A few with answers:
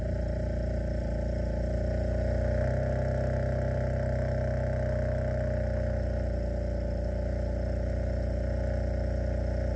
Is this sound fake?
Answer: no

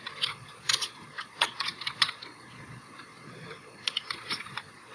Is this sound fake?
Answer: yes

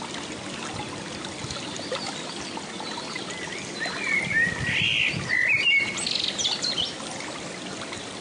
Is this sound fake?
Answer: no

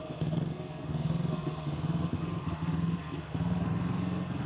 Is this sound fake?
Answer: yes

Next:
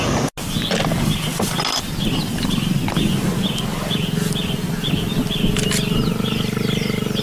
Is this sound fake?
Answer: no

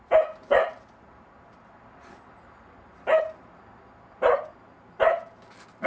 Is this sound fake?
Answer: no